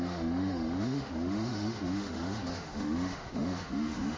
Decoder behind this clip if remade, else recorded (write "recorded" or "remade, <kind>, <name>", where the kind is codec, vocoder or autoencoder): remade, autoencoder, DAC-VAE